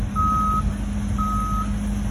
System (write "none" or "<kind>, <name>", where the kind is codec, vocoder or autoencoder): none